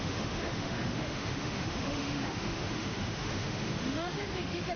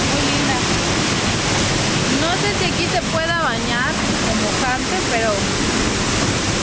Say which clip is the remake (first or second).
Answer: first